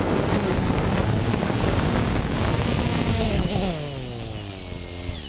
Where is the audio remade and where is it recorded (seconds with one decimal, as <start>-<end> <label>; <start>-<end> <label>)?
0.0-0.5 recorded; 0.5-3.7 remade; 3.7-5.3 recorded